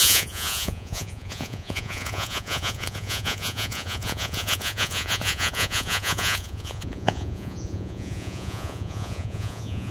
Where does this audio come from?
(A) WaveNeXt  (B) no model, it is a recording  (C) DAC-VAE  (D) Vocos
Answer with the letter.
D